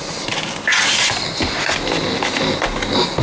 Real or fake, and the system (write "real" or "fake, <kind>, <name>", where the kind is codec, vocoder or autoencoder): real